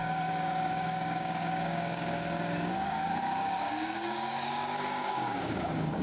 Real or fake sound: fake